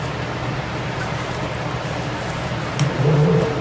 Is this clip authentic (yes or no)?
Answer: yes